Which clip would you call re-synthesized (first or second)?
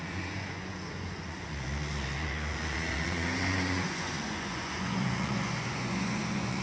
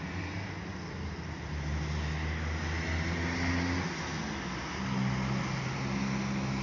first